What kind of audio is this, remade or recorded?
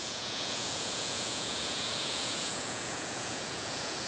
remade